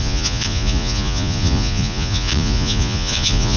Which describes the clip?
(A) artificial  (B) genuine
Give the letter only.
A